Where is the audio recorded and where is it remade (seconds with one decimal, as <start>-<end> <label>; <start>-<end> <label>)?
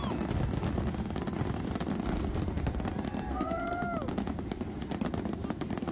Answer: 0.0-3.3 recorded; 3.3-3.8 remade; 3.8-5.9 recorded